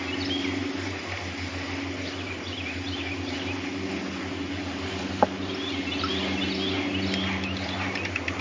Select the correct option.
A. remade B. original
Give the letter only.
B